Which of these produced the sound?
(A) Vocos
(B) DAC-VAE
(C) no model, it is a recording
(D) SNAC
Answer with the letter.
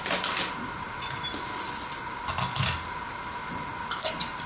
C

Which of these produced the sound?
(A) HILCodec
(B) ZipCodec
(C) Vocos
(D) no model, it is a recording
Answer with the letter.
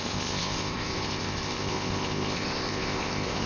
B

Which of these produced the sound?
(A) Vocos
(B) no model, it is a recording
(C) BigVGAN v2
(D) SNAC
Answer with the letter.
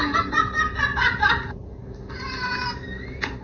B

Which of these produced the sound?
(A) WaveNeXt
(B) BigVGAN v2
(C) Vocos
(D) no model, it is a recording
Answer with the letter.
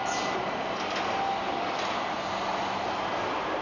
D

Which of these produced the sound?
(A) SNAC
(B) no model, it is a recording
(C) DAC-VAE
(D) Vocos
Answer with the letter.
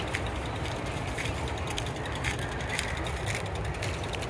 B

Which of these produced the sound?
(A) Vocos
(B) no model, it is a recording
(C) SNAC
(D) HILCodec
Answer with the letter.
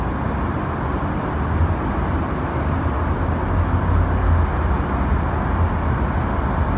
B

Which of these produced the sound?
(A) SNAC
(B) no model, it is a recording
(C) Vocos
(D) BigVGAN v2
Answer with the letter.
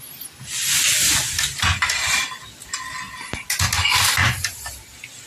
B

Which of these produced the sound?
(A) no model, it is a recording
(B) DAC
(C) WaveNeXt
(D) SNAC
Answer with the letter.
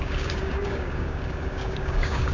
B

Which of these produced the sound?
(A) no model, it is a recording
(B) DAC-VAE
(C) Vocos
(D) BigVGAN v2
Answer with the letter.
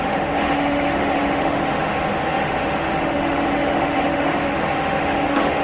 B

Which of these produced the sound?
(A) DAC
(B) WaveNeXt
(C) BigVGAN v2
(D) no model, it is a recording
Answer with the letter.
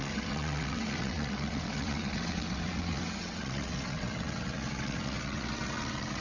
B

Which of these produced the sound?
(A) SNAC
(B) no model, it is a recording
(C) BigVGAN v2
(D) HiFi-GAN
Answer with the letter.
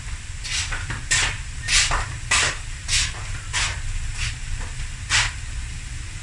B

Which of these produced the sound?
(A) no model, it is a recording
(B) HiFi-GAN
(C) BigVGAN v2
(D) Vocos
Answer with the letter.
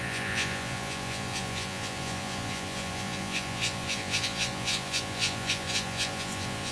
D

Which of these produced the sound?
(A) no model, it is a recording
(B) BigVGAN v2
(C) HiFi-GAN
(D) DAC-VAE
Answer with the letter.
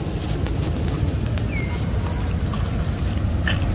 A